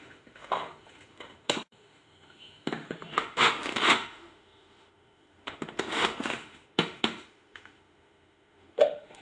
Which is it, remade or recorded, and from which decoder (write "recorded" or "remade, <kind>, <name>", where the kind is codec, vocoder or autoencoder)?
remade, autoencoder, DAC-VAE